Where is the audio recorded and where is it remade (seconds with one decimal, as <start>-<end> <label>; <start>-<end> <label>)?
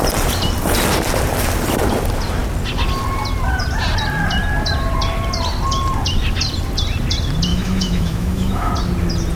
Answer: 0.0-7.5 recorded; 7.5-8.7 remade; 8.7-9.4 recorded